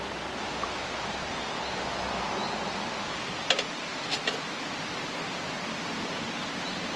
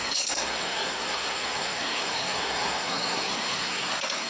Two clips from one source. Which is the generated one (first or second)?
second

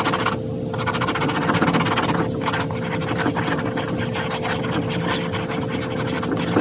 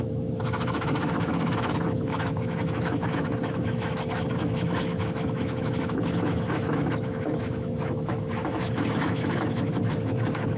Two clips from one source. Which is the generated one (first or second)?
second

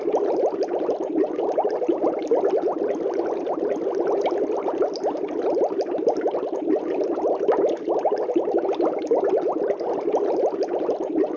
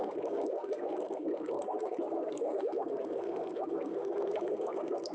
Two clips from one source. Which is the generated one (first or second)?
second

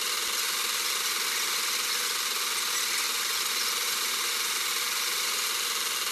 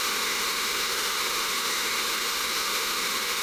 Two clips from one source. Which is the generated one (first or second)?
second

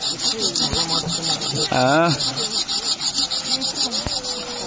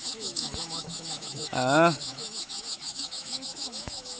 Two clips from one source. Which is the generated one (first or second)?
second